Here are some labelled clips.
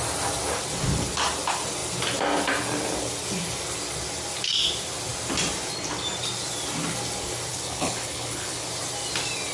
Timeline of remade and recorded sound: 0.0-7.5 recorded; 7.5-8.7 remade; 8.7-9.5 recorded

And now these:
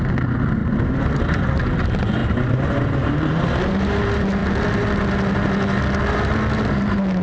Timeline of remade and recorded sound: 0.0-0.6 recorded; 0.6-1.6 remade; 1.6-2.2 recorded; 2.2-4.0 remade; 4.0-7.2 recorded